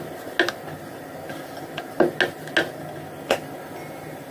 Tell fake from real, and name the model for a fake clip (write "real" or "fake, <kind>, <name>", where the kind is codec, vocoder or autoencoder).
real